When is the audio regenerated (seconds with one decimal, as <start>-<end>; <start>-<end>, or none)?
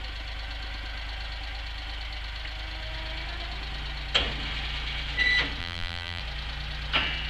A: 5.6-6.2